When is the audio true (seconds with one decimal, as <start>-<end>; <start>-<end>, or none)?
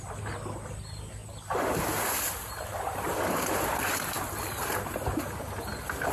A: 0.0-6.1